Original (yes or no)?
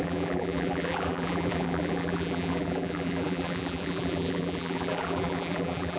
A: no